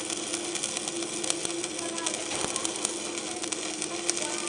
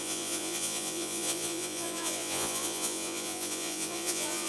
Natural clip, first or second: first